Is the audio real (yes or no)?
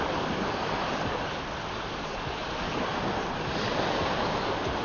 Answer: yes